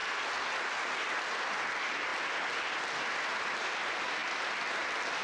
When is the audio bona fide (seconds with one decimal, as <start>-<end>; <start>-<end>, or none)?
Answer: 0.0-5.2